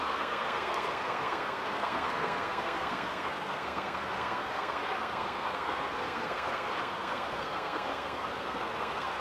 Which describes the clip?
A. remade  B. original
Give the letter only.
A